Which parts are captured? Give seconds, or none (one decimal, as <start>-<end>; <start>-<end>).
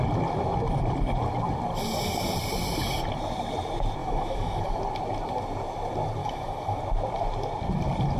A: 0.0-4.0; 4.8-6.2; 6.8-8.2